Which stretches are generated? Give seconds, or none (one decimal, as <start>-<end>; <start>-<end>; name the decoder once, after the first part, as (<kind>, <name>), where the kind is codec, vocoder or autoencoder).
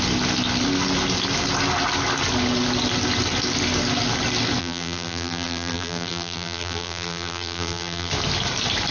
4.6-8.1 (vocoder, BigVGAN v2)